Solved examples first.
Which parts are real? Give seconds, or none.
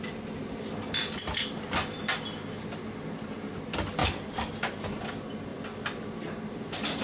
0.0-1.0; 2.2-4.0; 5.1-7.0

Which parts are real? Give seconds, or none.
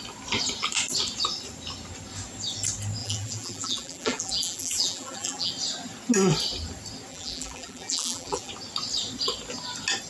0.0-3.0; 5.5-7.1; 8.5-10.1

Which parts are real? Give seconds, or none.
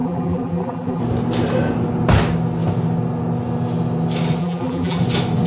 1.0-4.4; 5.0-5.5